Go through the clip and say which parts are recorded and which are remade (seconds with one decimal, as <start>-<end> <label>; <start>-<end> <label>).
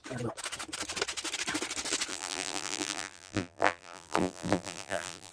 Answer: 0.0-2.1 recorded; 2.1-5.3 remade